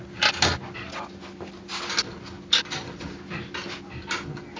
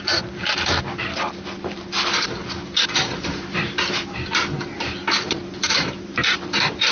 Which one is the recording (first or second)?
first